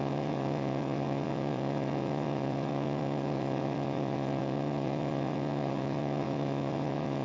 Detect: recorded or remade remade